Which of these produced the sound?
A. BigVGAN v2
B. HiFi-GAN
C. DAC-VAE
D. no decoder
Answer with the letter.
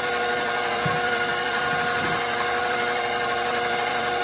A